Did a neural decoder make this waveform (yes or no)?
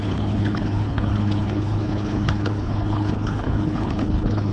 yes